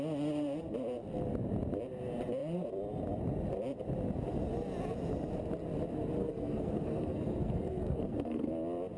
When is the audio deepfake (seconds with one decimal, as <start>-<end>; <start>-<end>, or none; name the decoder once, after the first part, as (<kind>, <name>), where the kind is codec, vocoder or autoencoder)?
6.2-8.5 (codec, SNAC)